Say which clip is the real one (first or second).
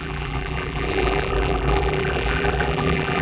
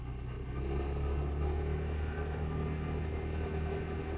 second